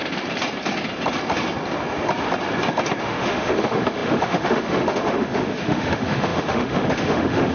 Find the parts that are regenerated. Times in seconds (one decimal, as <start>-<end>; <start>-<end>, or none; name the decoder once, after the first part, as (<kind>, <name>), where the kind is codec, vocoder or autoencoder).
3.0-7.5 (autoencoder, DAC-VAE)